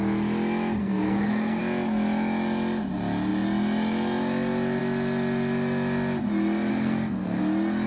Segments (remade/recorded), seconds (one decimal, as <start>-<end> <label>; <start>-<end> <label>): 0.0-0.8 recorded; 0.8-1.6 remade; 1.6-6.7 recorded; 6.7-7.4 remade; 7.4-7.9 recorded